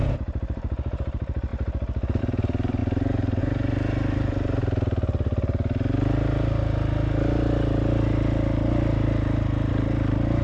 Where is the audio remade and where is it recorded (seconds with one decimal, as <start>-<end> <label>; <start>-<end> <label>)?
0.0-1.5 remade; 1.5-2.2 recorded; 2.2-2.8 remade; 2.8-3.4 recorded; 3.4-4.6 remade; 4.6-9.7 recorded; 9.7-10.4 remade